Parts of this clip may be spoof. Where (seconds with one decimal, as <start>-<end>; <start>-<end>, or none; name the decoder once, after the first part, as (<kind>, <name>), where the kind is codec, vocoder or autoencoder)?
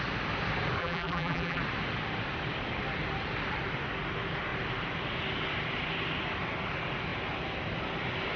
0.8-1.6 (vocoder, BigVGAN v2)